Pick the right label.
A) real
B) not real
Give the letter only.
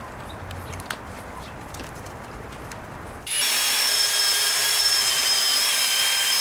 B